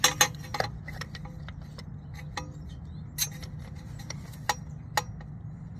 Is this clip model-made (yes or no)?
no